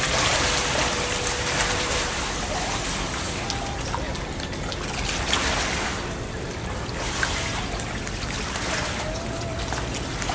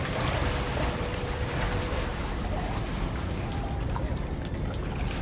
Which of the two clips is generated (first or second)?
second